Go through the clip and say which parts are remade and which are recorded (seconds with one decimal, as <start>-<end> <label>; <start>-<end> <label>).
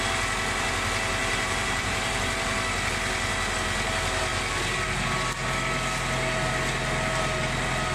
0.0-1.2 recorded; 1.2-2.2 remade; 2.2-7.9 recorded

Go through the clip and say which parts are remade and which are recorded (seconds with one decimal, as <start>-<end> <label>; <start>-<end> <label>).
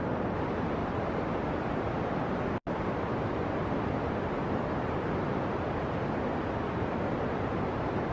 0.0-0.8 recorded; 0.8-1.4 remade; 1.4-8.1 recorded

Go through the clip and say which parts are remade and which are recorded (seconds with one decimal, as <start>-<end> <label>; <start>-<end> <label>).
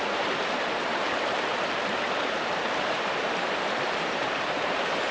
0.0-0.9 remade; 0.9-4.0 recorded; 4.0-5.1 remade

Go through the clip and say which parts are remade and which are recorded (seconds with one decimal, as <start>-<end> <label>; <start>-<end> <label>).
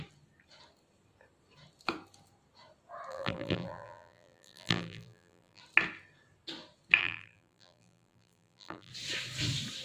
0.0-3.1 recorded; 3.1-5.6 remade; 5.6-7.0 recorded; 7.0-8.9 remade; 8.9-9.8 recorded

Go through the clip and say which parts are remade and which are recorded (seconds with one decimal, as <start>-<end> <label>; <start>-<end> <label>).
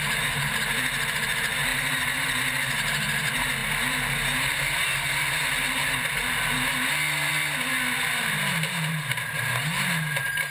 0.0-1.7 recorded; 1.7-2.4 remade; 2.4-10.5 recorded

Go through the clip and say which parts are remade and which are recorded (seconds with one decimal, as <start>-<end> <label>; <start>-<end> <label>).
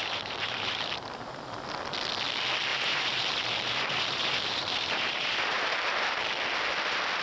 0.0-0.9 remade; 0.9-2.7 recorded; 2.7-6.1 remade; 6.1-7.2 recorded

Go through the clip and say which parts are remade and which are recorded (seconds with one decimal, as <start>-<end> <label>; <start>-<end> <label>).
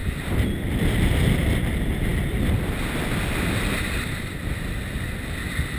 0.0-1.2 remade; 1.2-2.1 recorded; 2.1-5.8 remade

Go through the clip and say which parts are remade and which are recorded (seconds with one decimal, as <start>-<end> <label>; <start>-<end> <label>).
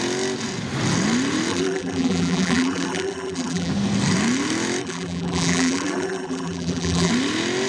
0.0-1.5 recorded; 1.5-3.7 remade; 3.7-4.8 recorded; 4.8-7.1 remade; 7.1-7.7 recorded